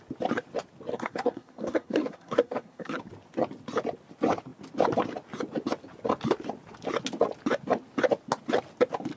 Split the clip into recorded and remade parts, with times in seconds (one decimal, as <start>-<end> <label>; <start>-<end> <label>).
0.0-0.9 recorded; 0.9-3.0 remade; 3.0-9.2 recorded